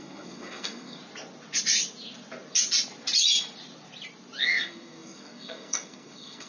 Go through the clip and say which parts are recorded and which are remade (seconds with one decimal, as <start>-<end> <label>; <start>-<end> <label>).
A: 0.0-1.0 remade; 1.0-4.4 recorded; 4.4-6.5 remade